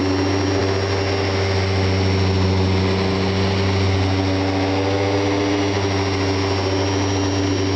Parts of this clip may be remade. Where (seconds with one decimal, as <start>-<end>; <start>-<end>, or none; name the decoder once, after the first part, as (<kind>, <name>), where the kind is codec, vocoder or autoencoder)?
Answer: none